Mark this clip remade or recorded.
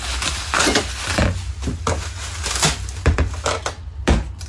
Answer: recorded